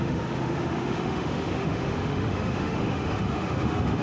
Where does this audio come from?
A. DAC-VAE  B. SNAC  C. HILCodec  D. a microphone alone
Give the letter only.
A